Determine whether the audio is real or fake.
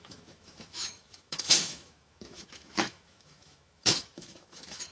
fake